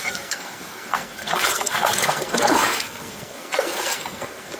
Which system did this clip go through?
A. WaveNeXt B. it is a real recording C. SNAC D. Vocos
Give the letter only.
C